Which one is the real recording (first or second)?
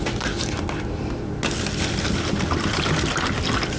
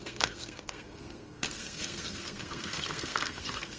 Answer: first